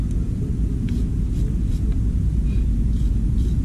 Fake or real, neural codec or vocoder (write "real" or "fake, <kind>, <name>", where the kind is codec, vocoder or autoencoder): real